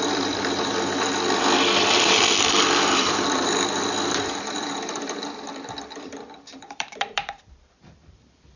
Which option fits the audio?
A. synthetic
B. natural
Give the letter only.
A